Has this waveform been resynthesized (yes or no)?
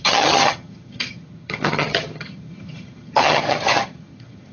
yes